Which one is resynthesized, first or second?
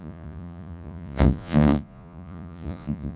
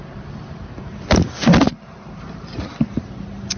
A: first